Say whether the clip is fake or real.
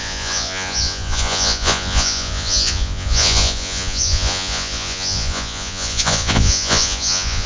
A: fake